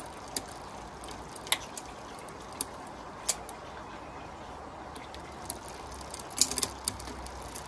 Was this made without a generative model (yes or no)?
yes